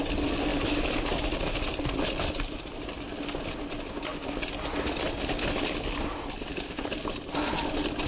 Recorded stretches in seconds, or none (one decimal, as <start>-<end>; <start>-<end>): 0.0-8.1